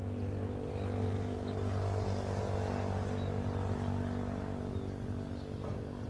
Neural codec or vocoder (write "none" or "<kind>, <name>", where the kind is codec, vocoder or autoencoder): none